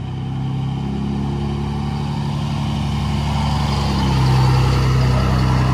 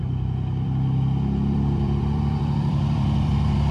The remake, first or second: second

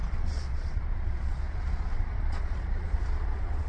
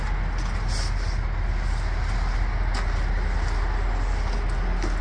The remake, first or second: first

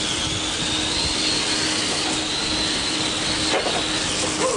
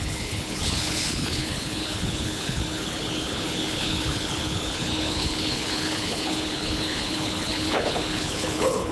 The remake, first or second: second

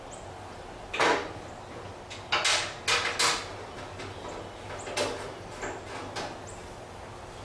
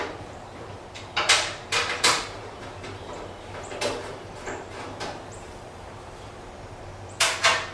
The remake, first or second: second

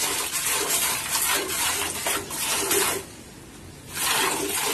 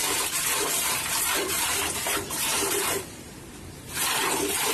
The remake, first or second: second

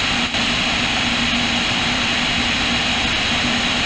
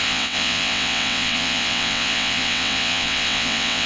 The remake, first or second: second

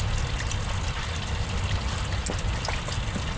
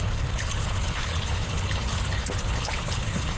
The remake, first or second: second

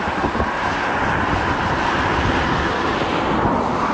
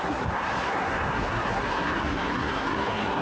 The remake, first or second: second